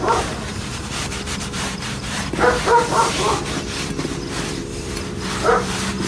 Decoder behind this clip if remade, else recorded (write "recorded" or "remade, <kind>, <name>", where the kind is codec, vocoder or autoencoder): remade, vocoder, BigVGAN v2